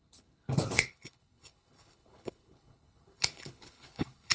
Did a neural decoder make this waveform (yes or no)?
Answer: yes